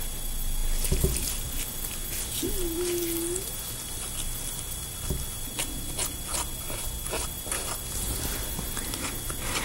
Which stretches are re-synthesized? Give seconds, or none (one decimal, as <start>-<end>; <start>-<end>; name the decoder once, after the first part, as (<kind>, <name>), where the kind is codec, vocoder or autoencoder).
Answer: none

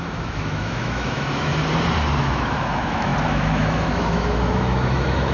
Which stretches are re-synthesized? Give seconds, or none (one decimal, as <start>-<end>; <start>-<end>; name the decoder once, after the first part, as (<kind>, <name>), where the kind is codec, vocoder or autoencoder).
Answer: 0.0-1.5 (autoencoder, DAC-VAE); 2.2-5.3

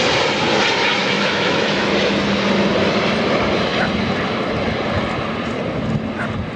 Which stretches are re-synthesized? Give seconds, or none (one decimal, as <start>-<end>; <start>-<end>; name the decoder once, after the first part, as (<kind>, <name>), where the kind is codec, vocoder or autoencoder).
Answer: 1.0-1.8 (autoencoder, DAC-VAE)

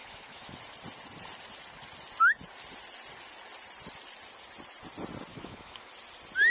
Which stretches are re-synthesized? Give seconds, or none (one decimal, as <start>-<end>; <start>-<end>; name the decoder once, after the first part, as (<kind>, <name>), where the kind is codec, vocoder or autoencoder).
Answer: 0.0-0.6 (autoencoder, DAC-VAE); 5.3-5.9